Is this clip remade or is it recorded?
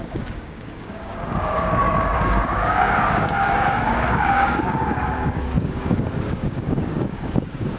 remade